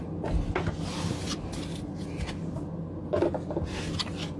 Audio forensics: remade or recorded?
recorded